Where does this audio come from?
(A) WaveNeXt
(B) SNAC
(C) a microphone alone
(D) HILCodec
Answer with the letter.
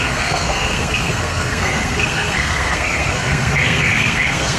B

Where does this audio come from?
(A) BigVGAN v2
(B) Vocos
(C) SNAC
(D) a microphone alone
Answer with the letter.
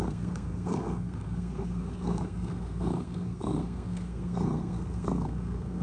C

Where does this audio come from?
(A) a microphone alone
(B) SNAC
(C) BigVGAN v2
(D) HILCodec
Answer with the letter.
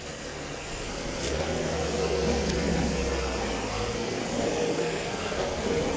B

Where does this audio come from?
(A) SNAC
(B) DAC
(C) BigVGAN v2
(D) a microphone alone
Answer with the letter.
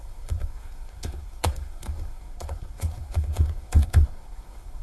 A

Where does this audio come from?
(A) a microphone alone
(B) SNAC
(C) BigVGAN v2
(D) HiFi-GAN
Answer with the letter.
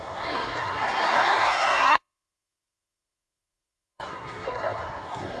B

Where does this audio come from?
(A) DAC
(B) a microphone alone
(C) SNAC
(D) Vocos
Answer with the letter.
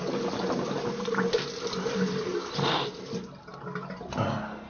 B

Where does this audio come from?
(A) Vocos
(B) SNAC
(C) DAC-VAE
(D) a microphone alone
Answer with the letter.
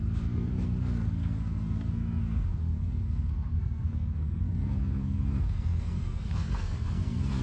B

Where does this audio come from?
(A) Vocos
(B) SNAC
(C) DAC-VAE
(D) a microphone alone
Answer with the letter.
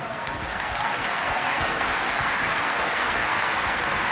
B